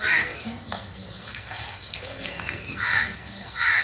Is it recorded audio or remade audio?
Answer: remade